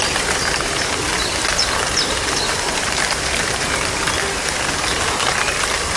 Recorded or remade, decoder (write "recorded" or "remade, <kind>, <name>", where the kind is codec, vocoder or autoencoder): remade, vocoder, BigVGAN v2